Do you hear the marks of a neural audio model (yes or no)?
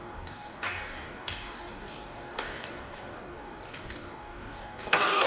yes